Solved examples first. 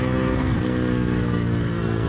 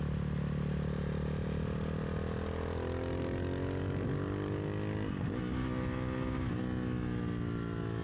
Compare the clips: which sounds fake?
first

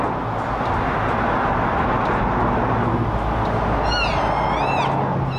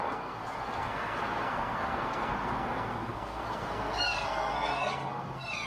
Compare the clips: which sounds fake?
second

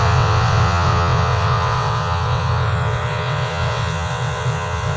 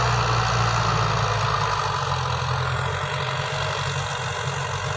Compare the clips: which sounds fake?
first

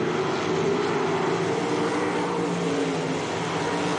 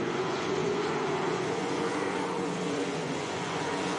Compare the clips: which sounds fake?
second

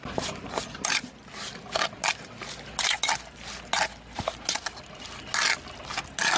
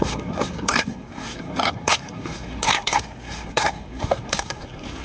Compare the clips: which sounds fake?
second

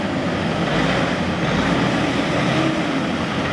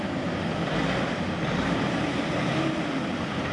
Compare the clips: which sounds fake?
second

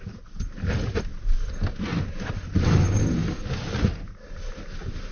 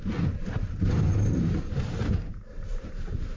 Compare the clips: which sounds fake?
second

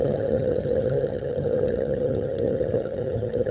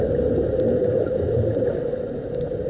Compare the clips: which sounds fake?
first